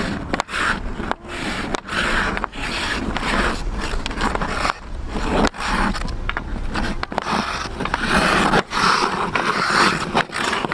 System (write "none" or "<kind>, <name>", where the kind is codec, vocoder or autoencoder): none